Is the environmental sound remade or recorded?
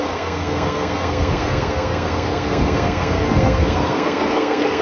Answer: remade